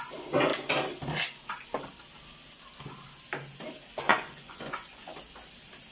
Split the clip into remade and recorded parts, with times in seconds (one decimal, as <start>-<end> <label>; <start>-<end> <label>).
0.0-4.1 recorded; 4.1-5.2 remade; 5.2-5.9 recorded